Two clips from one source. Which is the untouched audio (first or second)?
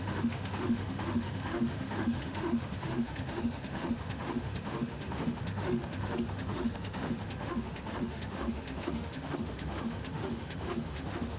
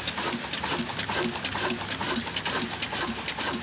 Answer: second